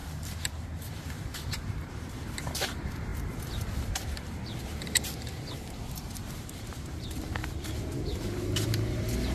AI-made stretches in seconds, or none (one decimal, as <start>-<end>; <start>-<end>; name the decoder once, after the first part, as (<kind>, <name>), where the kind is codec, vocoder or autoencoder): 0.0-7.4 (vocoder, BigVGAN v2); 8.0-9.3